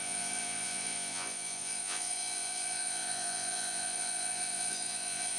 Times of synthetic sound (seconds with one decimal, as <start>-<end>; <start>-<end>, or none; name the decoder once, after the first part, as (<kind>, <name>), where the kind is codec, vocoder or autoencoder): 0.0-5.4 (vocoder, Vocos)